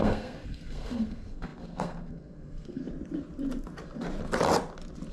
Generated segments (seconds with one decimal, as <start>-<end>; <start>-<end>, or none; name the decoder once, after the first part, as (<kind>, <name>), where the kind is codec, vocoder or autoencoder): 0.0-2.8 (codec, SNAC)